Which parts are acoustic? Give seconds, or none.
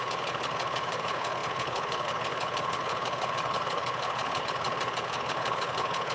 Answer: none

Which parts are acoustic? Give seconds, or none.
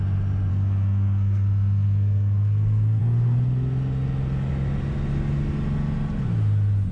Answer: 0.0-0.5; 3.0-6.9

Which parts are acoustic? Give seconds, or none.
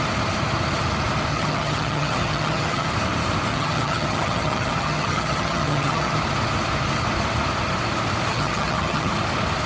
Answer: 0.0-1.3; 2.9-3.5; 6.2-8.3; 9.1-9.7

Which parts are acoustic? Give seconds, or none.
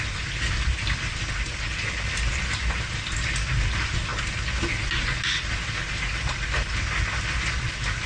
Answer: 0.0-8.1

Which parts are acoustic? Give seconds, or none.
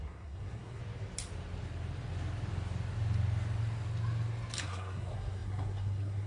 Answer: 0.8-4.6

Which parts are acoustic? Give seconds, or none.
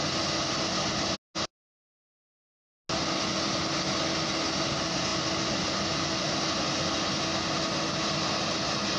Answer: 0.0-9.0